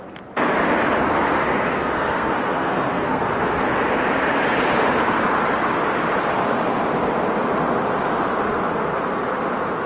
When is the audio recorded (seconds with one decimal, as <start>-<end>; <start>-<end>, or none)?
0.0-1.5; 3.3-9.9